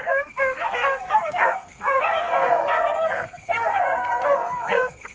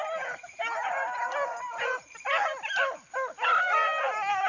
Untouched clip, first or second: second